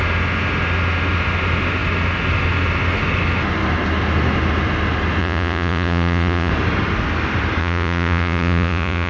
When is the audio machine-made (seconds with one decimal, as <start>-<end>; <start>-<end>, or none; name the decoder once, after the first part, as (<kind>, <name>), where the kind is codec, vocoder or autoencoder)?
5.2-6.5 (vocoder, Vocos); 7.6-9.1